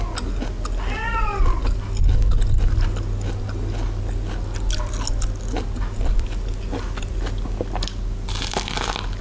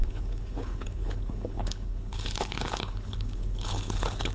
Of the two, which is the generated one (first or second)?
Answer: second